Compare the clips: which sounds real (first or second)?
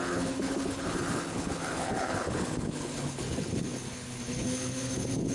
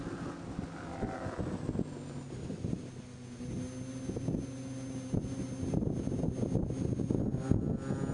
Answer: second